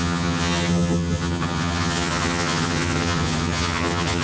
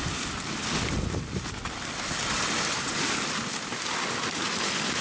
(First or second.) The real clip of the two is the second